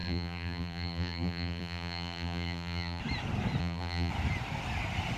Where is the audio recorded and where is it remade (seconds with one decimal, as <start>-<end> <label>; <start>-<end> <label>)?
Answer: 0.0-3.0 remade; 3.0-3.6 recorded; 3.6-4.1 remade; 4.1-5.2 recorded